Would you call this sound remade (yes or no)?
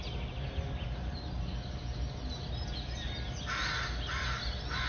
no